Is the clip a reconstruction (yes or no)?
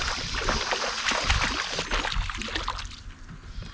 no